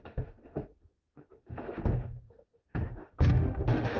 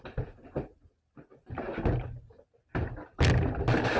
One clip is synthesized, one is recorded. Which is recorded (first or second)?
second